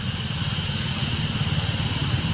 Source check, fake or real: real